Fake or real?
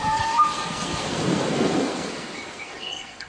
fake